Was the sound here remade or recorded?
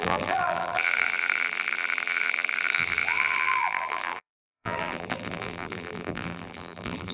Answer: remade